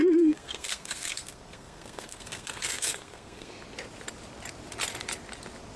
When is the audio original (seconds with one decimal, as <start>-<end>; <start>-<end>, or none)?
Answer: 3.5-5.8